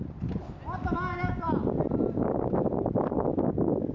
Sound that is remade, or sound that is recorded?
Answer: recorded